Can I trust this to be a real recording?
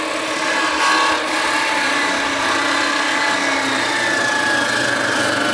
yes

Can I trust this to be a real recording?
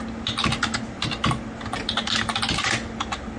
yes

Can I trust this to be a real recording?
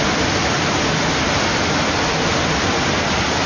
yes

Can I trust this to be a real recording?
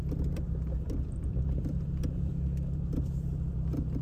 no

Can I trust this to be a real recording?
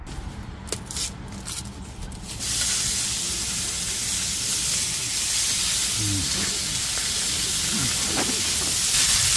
yes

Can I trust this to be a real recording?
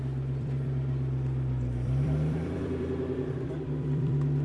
no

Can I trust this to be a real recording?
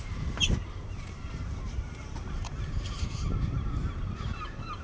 no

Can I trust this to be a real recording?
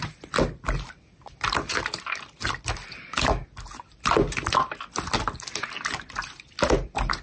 yes